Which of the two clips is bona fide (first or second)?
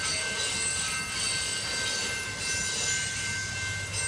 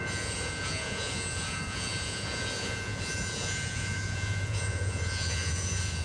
first